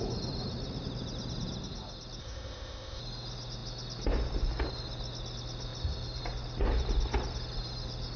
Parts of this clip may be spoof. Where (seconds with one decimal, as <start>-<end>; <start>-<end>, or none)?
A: 2.2-3.0